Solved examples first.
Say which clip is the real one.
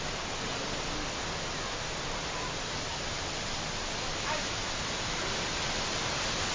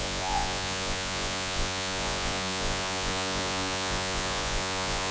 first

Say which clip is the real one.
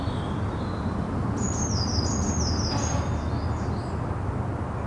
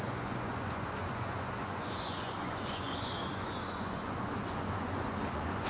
first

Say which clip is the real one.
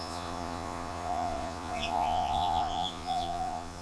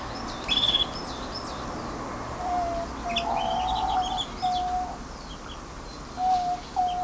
second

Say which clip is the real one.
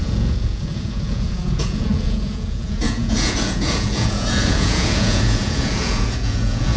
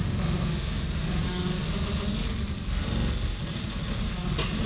second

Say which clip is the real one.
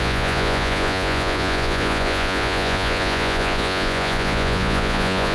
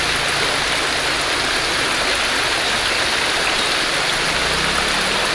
second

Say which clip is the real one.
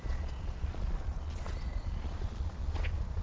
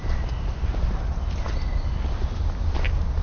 second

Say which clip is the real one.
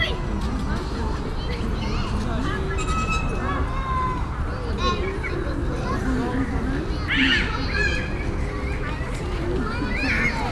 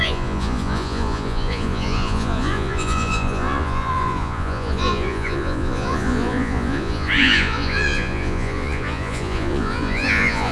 first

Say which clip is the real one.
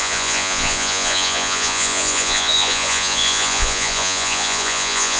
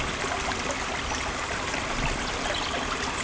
second